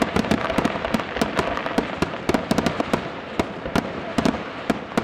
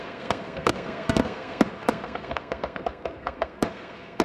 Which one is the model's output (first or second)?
second